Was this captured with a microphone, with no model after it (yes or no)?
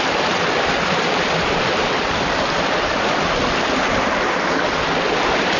yes